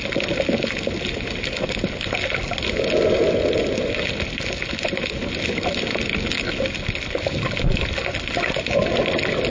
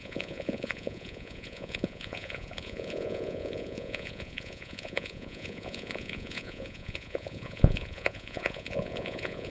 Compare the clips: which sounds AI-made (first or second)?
second